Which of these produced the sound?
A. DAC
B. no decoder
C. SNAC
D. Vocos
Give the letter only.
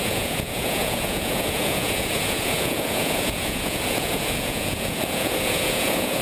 D